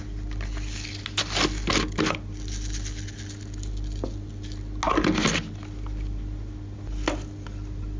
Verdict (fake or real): real